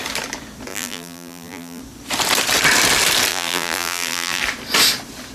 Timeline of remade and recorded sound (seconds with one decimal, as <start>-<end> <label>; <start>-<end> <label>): 0.0-0.7 recorded; 0.7-1.8 remade; 1.8-3.3 recorded; 3.3-4.4 remade; 4.4-5.3 recorded